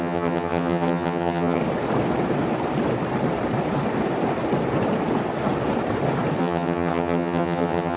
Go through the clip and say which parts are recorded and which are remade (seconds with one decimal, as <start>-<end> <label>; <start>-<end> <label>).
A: 0.0-1.6 remade; 1.6-6.4 recorded; 6.4-8.0 remade